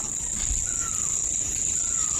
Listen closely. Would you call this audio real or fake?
real